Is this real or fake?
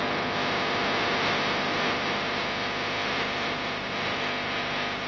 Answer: real